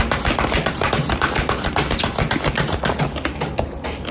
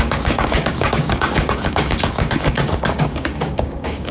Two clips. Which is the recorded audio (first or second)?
first